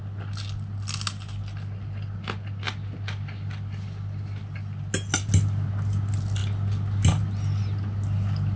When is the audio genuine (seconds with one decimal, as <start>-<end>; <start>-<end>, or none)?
0.0-8.6